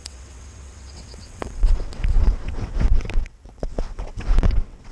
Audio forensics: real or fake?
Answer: fake